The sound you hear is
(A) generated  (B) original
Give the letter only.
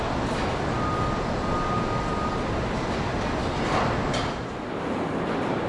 B